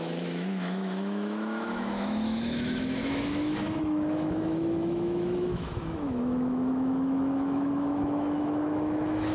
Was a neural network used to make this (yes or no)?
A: yes